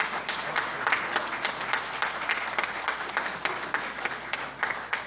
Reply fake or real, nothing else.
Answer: real